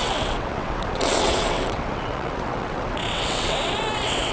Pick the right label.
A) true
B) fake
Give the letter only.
B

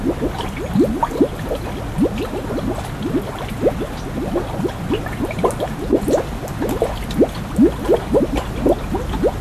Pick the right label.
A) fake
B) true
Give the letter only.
B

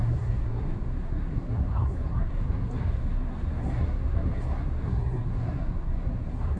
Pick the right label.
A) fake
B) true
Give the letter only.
A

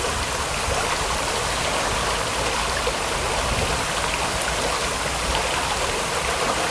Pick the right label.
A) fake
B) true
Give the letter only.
B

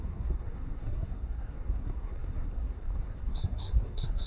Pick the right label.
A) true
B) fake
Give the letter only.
B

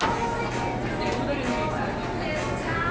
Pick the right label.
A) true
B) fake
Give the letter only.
A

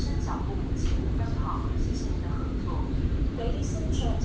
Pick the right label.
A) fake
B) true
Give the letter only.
A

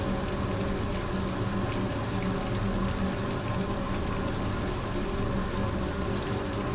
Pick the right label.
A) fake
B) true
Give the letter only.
B